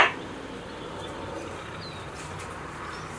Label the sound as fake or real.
fake